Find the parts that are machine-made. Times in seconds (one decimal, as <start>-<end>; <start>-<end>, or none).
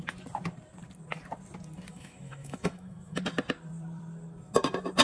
1.9-3.2